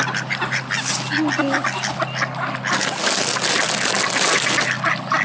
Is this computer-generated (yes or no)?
no